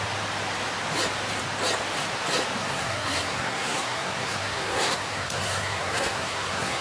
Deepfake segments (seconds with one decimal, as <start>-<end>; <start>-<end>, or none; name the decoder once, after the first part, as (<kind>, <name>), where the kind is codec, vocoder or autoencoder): 2.6-6.8 (codec, SNAC)